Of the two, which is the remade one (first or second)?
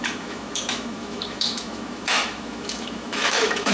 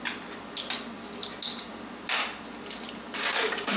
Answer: first